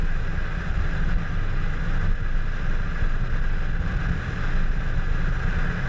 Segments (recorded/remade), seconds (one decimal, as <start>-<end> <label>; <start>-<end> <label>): 0.0-5.9 recorded